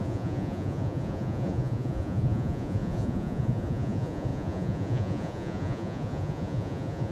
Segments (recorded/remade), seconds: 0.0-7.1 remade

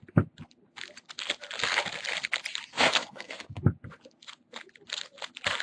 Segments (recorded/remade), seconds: 0.0-2.7 recorded; 2.7-3.6 remade; 3.6-5.6 recorded

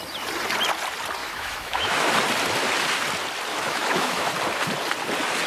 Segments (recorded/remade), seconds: 0.0-1.2 recorded; 1.2-2.1 remade; 2.1-3.5 recorded; 3.5-4.3 remade; 4.3-5.5 recorded

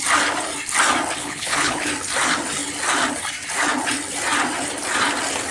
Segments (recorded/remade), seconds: 0.0-1.2 recorded; 1.2-1.9 remade; 1.9-5.5 recorded

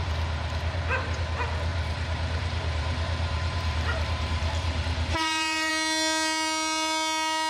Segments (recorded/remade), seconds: 0.0-1.2 remade; 1.2-1.7 recorded; 1.7-5.7 remade; 5.7-7.5 recorded

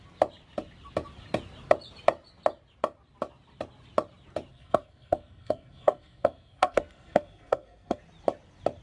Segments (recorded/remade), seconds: 0.0-4.5 recorded; 4.5-8.0 remade; 8.0-8.8 recorded

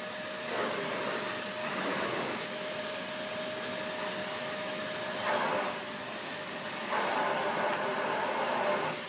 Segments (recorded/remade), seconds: 0.0-1.6 recorded; 1.6-2.8 remade; 2.8-4.2 recorded; 4.2-4.8 remade; 4.8-6.2 recorded; 6.2-6.9 remade; 6.9-9.1 recorded